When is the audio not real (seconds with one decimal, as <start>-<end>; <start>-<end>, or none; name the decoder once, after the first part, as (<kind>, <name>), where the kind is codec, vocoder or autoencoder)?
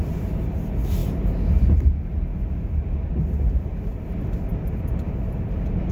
none